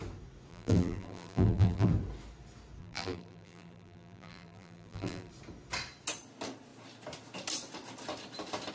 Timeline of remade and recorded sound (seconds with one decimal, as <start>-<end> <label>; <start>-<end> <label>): 0.0-0.5 recorded; 0.5-1.9 remade; 1.9-2.8 recorded; 2.8-5.3 remade; 5.3-8.7 recorded